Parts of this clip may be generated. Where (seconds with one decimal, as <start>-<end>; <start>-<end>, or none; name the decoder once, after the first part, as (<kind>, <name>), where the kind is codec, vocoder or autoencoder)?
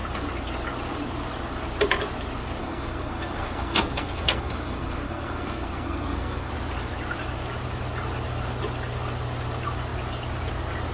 2.6-6.5 (codec, SNAC)